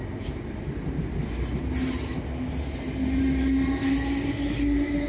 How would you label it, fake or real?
real